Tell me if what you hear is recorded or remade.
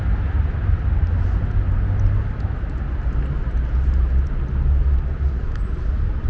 recorded